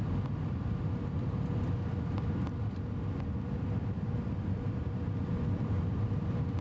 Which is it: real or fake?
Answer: fake